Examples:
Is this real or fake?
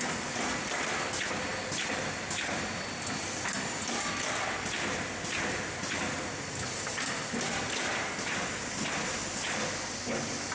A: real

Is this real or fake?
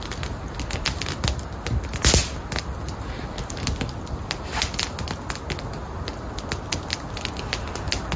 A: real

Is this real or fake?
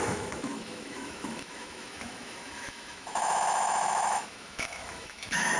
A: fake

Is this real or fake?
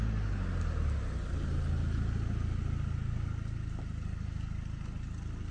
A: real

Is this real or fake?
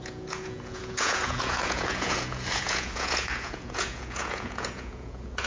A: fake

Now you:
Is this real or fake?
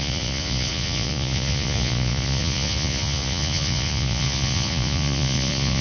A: fake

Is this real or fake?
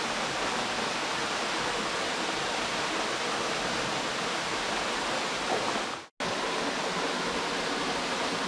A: real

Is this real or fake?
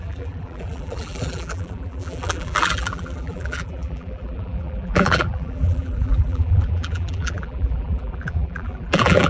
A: fake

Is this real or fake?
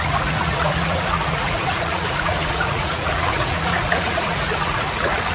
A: fake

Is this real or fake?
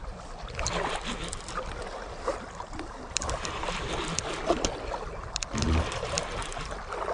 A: real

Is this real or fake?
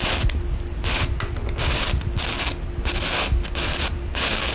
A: real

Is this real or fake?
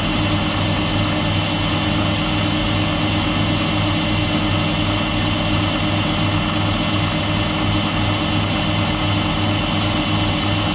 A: real